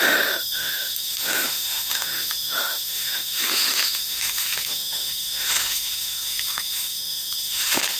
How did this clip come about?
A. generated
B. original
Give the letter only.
A